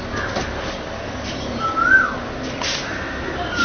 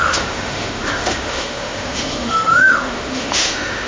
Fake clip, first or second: second